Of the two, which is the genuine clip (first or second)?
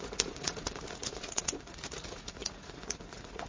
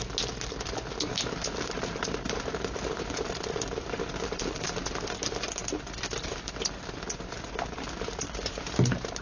second